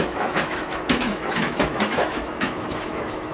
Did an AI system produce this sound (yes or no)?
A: yes